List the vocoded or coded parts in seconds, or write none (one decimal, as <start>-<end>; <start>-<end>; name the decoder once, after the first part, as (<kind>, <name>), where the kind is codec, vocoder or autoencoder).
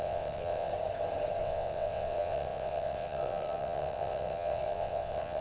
0.0-0.7 (vocoder, WaveNeXt); 1.4-5.4